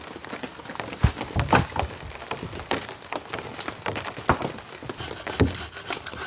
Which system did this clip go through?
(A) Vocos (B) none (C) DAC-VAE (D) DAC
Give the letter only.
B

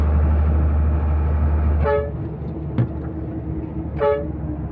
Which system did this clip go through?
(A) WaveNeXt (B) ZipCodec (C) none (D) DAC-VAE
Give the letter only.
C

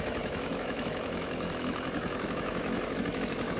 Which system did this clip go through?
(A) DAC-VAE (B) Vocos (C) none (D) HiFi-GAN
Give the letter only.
A